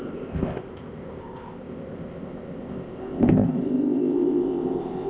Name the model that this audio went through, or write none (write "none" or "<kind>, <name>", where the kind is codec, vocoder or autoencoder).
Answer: codec, ZipCodec